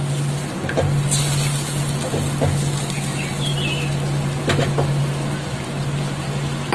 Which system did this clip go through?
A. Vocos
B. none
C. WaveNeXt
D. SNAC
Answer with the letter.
B